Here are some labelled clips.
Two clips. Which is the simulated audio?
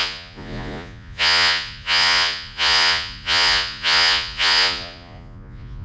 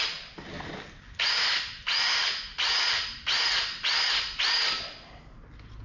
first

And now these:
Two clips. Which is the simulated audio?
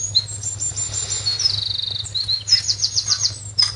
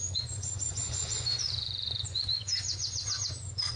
second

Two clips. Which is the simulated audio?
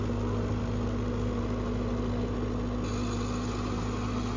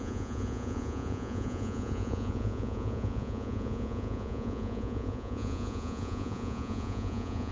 second